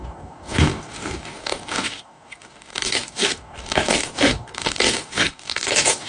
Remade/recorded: remade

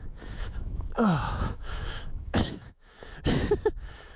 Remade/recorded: remade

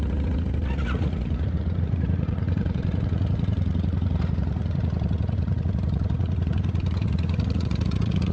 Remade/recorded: remade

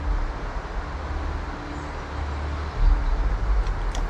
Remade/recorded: recorded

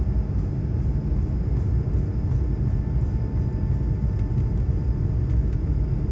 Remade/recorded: recorded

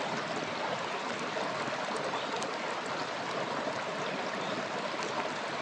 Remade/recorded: recorded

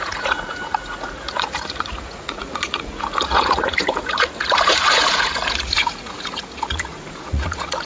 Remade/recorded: remade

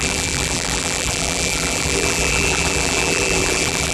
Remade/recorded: remade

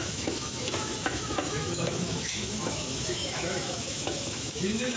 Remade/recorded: remade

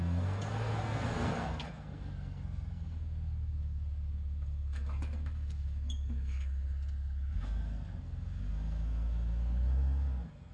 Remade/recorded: remade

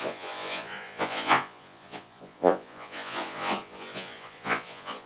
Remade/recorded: remade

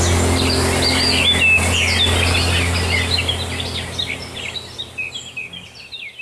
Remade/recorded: recorded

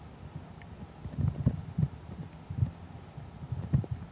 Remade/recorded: recorded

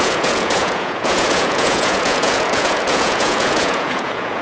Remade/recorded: remade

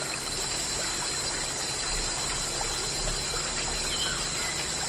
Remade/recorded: recorded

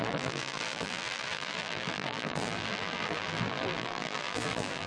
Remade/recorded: remade